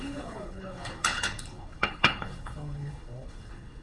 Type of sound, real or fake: fake